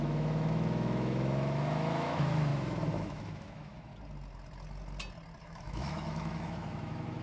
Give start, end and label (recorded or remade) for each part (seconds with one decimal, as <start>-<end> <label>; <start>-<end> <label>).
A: 0.0-3.9 remade; 3.9-5.4 recorded; 5.4-7.2 remade

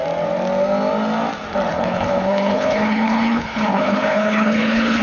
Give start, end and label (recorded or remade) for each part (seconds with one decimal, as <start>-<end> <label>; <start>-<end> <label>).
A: 0.0-1.7 recorded; 1.7-5.0 remade

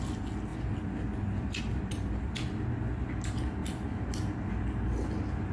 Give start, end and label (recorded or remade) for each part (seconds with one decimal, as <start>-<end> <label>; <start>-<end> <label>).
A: 0.0-5.5 recorded

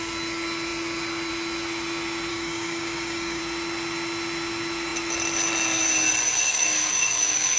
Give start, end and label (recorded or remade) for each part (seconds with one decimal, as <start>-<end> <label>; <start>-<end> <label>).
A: 0.0-2.3 recorded; 2.3-3.4 remade; 3.4-6.5 recorded; 6.5-7.6 remade

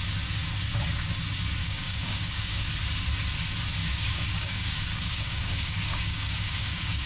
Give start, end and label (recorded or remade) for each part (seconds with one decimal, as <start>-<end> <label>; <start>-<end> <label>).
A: 0.0-1.6 recorded; 1.6-2.7 remade; 2.7-3.8 recorded; 3.8-7.1 remade